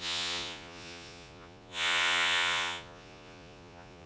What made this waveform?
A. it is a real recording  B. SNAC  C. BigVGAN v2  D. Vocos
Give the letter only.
D